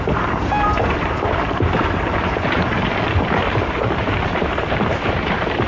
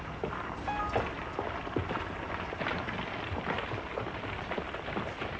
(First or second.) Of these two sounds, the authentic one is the second